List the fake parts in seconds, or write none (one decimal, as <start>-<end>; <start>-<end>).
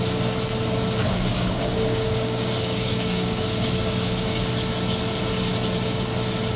1.0-4.5